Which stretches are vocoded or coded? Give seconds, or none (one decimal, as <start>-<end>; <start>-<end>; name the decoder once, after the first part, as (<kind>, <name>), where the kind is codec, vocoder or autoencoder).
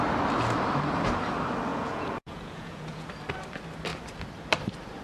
1.7-3.1 (vocoder, Vocos)